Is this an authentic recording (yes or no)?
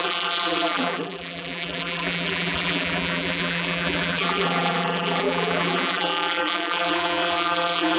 no